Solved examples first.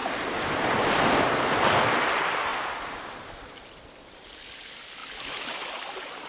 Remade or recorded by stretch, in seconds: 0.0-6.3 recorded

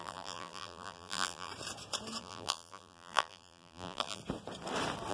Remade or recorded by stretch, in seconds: 0.0-1.5 remade; 1.5-2.2 recorded; 2.2-4.2 remade; 4.2-5.1 recorded

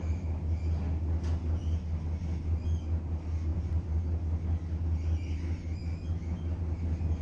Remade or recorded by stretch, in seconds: 0.0-3.5 recorded; 3.5-4.0 remade; 4.0-7.2 recorded

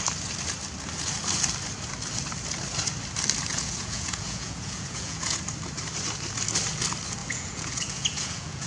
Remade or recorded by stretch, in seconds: 0.0-3.5 recorded; 3.5-5.4 remade; 5.4-7.2 recorded; 7.2-8.7 remade